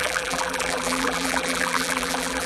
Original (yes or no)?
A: no